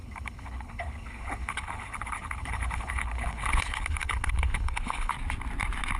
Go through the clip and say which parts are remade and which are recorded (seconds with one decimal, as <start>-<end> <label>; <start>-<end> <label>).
0.0-5.1 remade; 5.1-6.0 recorded